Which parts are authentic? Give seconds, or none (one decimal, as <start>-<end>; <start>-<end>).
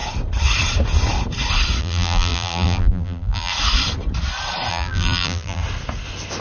0.0-1.8; 3.5-4.7; 5.6-6.4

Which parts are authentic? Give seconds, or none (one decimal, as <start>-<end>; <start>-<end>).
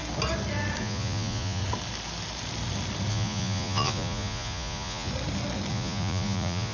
0.0-0.8; 1.6-3.1; 5.1-5.7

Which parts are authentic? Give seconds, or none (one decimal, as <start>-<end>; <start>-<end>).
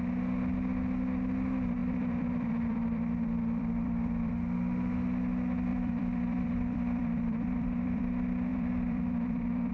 0.0-1.8; 4.3-5.7; 8.0-8.5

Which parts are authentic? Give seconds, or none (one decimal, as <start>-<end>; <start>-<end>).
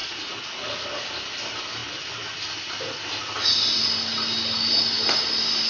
0.0-5.7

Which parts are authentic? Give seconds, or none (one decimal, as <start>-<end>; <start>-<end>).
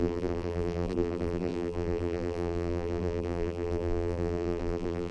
none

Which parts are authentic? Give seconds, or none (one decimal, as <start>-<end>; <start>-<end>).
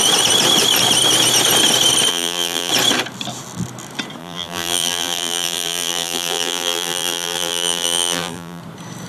0.0-2.1; 2.7-4.2; 8.6-9.1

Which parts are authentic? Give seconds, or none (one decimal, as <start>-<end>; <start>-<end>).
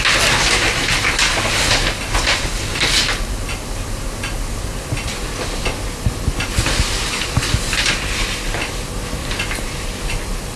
0.0-9.2; 10.1-10.6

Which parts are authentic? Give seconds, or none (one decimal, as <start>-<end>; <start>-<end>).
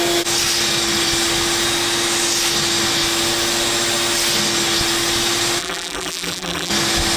0.0-5.6; 6.7-7.2